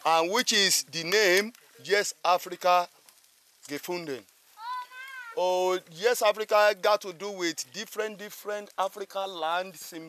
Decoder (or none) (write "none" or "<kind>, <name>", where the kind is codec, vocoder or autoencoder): none